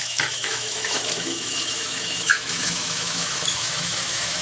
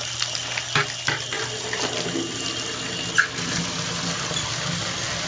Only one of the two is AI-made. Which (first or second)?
first